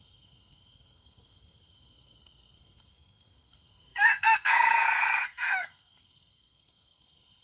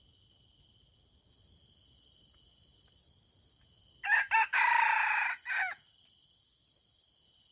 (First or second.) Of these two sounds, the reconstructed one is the first